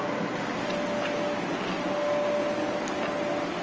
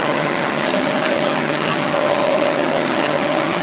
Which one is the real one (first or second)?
first